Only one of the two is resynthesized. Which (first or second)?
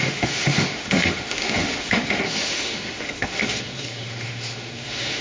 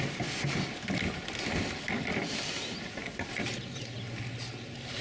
first